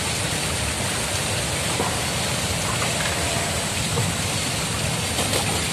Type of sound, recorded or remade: recorded